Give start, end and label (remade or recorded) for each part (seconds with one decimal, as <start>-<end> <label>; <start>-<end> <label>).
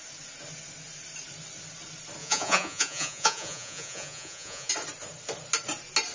0.0-2.2 recorded; 2.2-4.7 remade; 4.7-6.1 recorded